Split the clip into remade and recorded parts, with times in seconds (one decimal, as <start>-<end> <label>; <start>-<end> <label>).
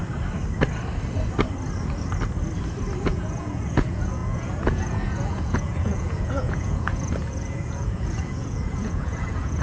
0.0-3.0 recorded; 3.0-9.6 remade